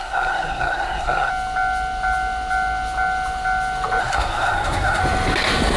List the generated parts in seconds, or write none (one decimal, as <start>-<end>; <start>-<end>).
0.0-1.3; 4.0-5.0